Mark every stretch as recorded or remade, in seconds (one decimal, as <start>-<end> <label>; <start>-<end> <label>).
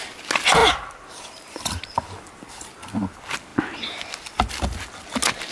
0.0-0.6 recorded; 0.6-1.6 remade; 1.6-5.5 recorded